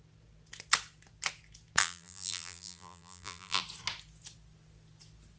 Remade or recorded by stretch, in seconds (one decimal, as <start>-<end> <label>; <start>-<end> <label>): 0.0-1.8 recorded; 1.8-3.6 remade; 3.6-5.4 recorded